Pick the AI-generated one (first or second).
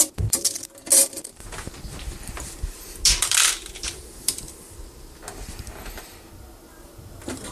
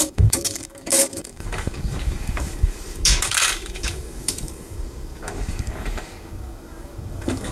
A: second